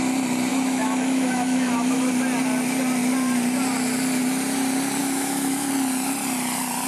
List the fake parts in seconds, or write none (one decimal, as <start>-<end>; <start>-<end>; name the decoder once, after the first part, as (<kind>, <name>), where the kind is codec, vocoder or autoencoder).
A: 0.5-2.1 (autoencoder, DAC-VAE); 5.0-5.7